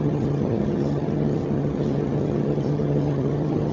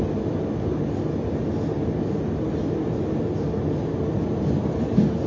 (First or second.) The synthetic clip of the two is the first